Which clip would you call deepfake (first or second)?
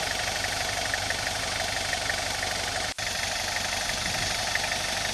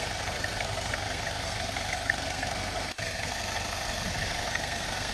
second